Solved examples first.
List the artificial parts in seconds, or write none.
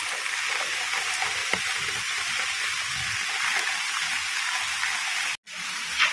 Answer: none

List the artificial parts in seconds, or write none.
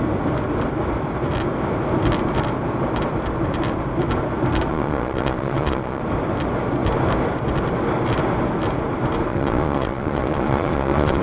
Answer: 4.7-6.0 (vocoder, Vocos); 9.3-11.2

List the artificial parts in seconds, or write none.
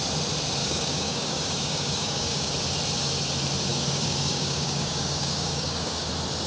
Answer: 0.6-2.5 (codec, DAC); 3.7-6.1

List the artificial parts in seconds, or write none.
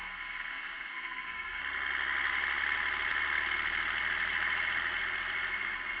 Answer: 0.0-1.6 (codec, SNAC)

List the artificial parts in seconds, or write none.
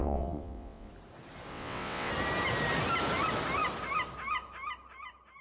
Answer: 0.0-0.9 (vocoder, WaveNeXt); 1.5-2.1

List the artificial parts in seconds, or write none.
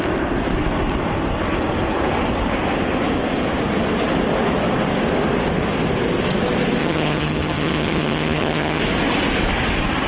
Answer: 6.8-8.8 (vocoder, HiFi-GAN)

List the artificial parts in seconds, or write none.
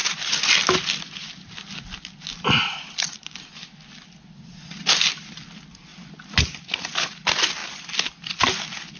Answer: none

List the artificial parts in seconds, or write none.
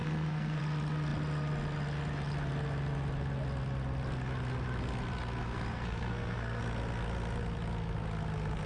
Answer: 0.0-0.6 (codec, SNAC); 5.4-6.6